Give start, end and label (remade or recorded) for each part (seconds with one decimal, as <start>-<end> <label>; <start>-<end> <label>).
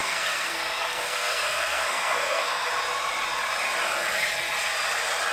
0.0-2.7 remade; 2.7-5.3 recorded